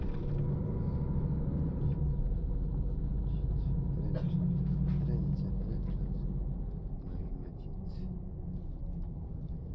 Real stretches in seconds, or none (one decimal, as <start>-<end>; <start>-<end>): 0.0-9.7